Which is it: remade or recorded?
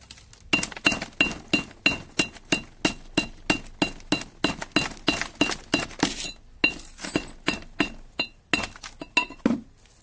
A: recorded